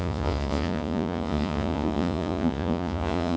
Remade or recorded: remade